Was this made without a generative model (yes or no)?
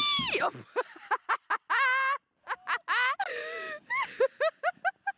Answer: yes